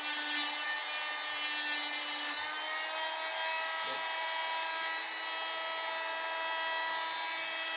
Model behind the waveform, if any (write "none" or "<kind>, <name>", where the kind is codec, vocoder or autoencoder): none